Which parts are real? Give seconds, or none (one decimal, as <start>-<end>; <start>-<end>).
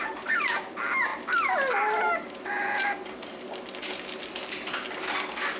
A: 0.0-5.6